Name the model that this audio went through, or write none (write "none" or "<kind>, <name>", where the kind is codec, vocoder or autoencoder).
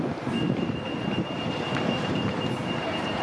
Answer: vocoder, BigVGAN v2